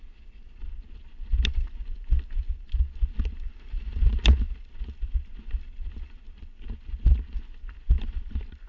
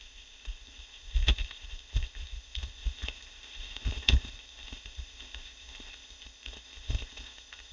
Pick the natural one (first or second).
first